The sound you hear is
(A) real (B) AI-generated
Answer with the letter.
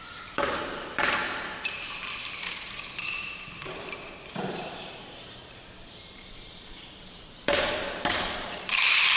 B